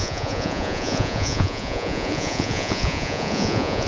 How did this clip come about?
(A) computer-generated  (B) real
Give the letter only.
A